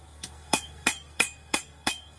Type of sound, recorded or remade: remade